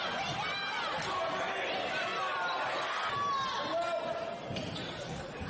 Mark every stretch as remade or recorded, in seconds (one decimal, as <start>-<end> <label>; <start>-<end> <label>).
0.0-5.5 recorded